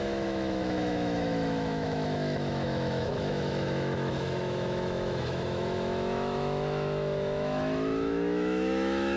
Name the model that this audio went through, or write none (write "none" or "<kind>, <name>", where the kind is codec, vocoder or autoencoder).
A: autoencoder, DAC-VAE